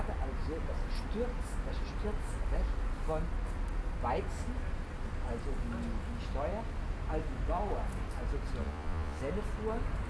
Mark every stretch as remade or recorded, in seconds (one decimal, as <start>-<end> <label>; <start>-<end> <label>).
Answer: 0.0-8.6 recorded; 8.6-9.2 remade; 9.2-10.1 recorded